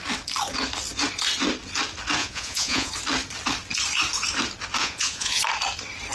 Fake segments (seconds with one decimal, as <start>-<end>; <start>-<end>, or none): 2.2-2.9; 4.8-5.4